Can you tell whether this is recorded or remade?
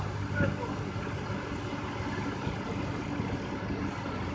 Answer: recorded